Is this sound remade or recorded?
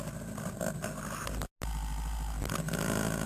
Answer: recorded